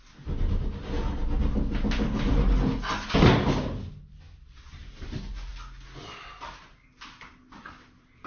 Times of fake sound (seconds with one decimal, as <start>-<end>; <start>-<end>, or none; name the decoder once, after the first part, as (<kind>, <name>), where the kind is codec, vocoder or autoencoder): none